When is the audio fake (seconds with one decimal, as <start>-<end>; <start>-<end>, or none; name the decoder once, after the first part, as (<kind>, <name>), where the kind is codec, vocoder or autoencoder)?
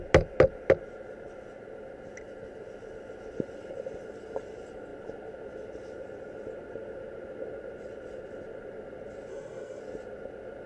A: 9.3-9.8 (codec, SNAC)